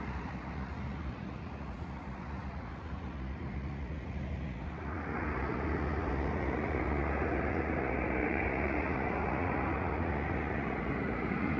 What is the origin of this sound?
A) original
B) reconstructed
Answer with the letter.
B